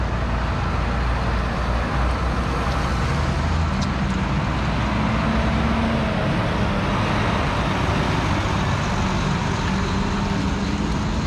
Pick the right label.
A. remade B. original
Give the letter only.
B